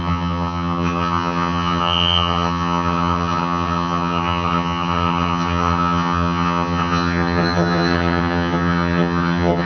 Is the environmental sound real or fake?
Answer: fake